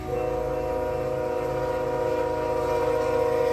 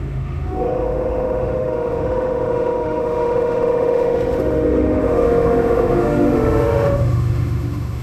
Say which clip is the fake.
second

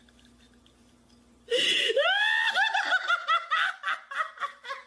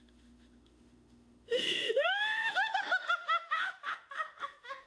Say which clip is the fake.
second